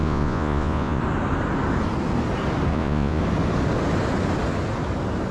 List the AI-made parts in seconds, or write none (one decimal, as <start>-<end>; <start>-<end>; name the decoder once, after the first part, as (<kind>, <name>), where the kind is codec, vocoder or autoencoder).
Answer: 0.0-1.0 (vocoder, Vocos); 2.7-3.2